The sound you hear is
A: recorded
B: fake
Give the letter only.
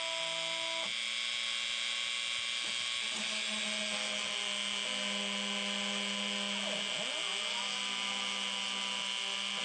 A